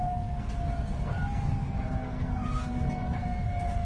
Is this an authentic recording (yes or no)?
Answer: no